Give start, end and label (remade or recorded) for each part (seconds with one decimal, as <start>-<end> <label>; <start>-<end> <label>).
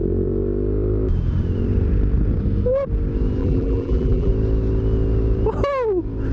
0.0-3.4 recorded; 3.4-4.3 remade; 4.3-6.3 recorded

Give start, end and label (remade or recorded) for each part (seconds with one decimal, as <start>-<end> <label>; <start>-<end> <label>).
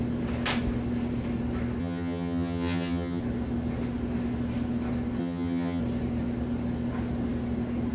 0.0-1.8 recorded; 1.8-3.2 remade; 3.2-5.2 recorded; 5.2-5.8 remade; 5.8-7.9 recorded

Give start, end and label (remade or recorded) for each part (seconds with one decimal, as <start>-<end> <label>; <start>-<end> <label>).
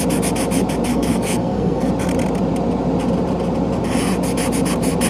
0.0-0.9 recorded; 0.9-1.9 remade; 1.9-5.1 recorded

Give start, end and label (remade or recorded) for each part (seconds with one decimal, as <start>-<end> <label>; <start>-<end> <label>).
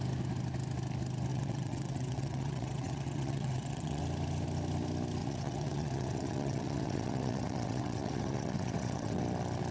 0.0-1.3 recorded; 1.3-4.0 remade; 4.0-5.2 recorded; 5.2-9.2 remade; 9.2-9.7 recorded